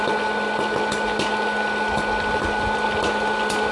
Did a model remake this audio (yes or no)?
no